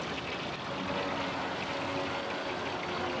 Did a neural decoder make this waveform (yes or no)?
no